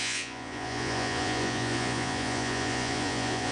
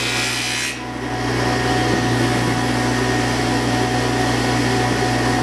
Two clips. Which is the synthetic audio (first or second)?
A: first